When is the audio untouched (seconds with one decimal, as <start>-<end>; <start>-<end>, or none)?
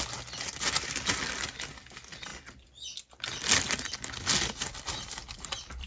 0.0-5.9